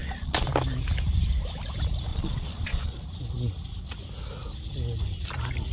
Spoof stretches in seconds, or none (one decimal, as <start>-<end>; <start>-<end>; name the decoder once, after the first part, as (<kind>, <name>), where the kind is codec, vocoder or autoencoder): 0.0-0.5 (vocoder, Vocos); 2.1-3.0